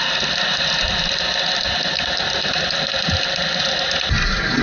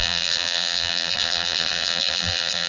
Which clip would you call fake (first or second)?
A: second